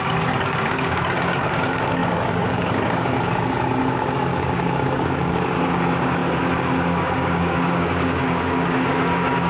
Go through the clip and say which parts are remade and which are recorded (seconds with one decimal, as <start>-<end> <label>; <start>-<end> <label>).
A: 0.0-9.5 remade